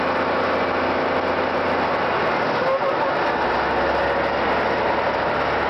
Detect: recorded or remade recorded